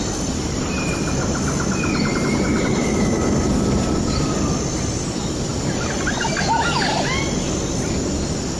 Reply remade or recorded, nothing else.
recorded